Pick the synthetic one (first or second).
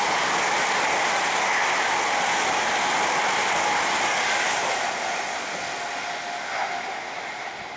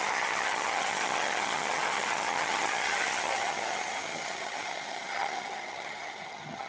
second